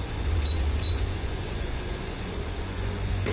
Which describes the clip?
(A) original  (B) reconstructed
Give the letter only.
B